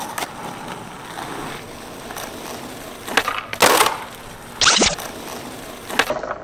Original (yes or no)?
yes